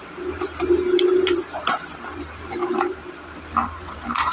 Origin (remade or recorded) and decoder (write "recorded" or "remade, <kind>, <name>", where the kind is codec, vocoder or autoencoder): remade, vocoder, BigVGAN v2